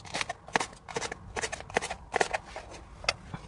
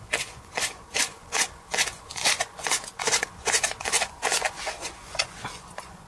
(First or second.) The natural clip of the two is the first